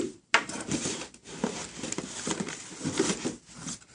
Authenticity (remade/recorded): recorded